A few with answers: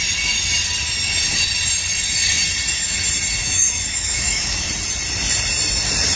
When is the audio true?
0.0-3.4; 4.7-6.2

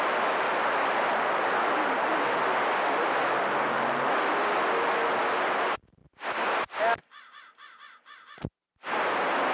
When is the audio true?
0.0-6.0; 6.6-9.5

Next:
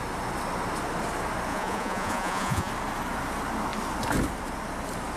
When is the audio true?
0.0-1.5; 2.7-5.2

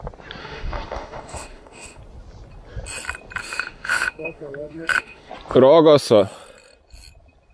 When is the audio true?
0.0-0.4; 2.0-3.4; 5.3-7.5

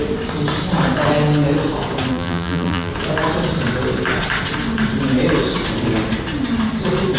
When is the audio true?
0.0-2.1; 2.9-7.2